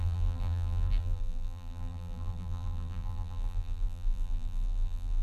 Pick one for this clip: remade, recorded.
remade